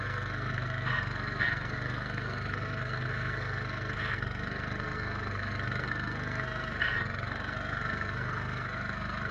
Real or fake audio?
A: fake